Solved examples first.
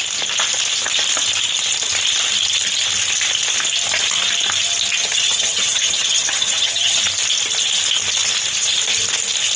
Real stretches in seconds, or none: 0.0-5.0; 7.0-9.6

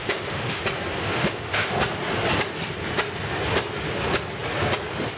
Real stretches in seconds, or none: 0.6-1.0; 1.7-5.2

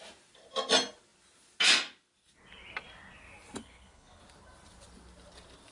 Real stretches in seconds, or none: 0.0-3.6; 4.2-5.7